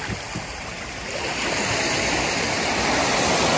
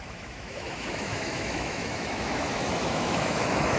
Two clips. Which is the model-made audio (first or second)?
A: second